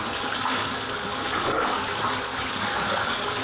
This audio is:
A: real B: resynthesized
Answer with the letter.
B